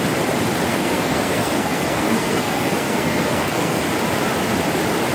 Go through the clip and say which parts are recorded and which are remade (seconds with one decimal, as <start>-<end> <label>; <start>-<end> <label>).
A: 0.0-0.7 recorded; 0.7-3.8 remade; 3.8-5.1 recorded